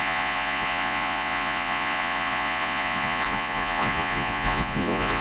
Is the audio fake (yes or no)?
yes